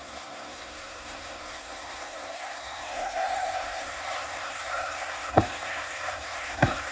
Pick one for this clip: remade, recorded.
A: remade